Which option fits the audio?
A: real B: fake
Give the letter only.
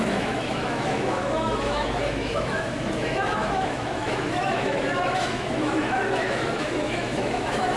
B